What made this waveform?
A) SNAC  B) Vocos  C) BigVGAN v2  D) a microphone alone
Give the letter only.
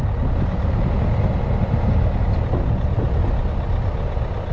D